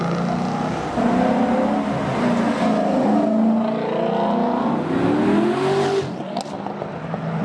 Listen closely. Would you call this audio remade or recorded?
recorded